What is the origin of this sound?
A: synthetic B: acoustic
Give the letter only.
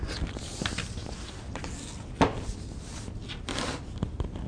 B